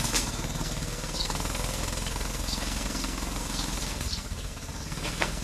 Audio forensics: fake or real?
fake